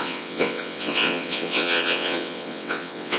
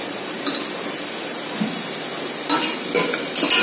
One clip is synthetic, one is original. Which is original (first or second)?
second